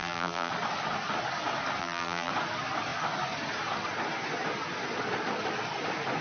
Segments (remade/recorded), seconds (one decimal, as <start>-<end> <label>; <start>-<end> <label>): 0.0-0.5 remade; 0.5-1.8 recorded; 1.8-2.3 remade; 2.3-6.2 recorded